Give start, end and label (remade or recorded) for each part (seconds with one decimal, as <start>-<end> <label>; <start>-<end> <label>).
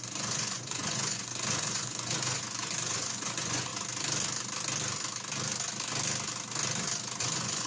0.0-3.7 remade; 3.7-7.2 recorded; 7.2-7.7 remade